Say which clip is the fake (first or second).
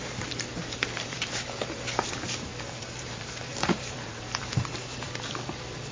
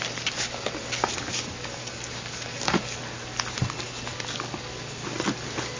first